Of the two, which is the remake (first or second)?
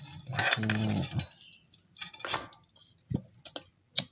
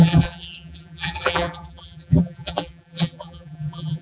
second